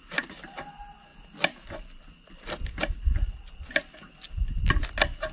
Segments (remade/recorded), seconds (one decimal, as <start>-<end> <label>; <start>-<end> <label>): 0.0-5.3 recorded